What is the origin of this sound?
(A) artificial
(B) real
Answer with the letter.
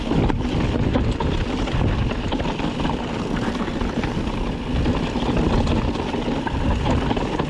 B